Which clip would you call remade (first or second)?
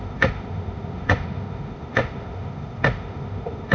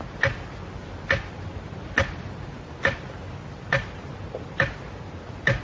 first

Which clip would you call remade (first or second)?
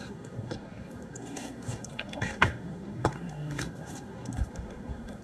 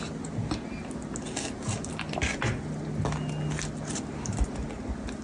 first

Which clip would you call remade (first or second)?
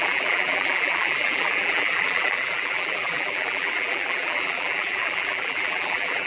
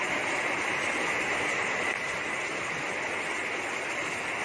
first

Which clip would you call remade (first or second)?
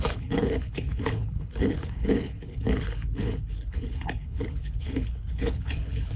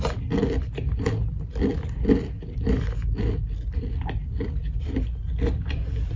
first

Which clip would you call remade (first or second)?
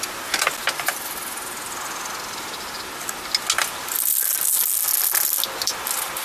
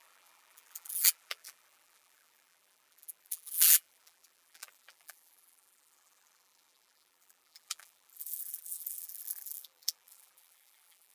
second